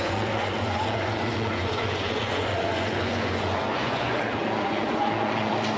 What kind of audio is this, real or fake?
fake